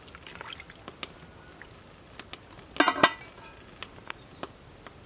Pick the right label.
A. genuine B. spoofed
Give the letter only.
A